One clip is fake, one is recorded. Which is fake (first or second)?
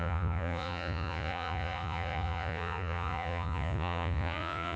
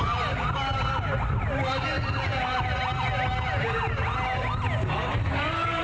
first